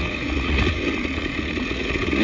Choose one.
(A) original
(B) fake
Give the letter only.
B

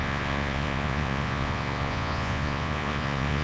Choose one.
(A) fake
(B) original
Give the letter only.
A